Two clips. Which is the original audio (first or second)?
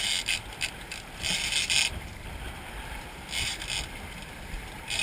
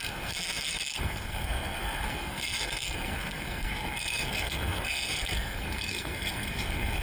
first